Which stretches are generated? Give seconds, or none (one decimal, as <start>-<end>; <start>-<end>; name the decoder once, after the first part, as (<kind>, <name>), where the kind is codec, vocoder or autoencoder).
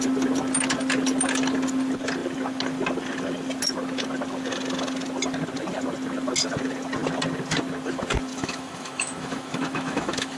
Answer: 8.3-10.4 (autoencoder, DAC-VAE)